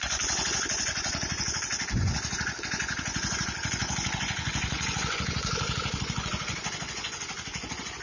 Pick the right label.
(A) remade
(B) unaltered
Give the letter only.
A